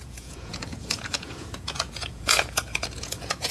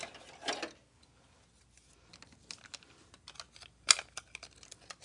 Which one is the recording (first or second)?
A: second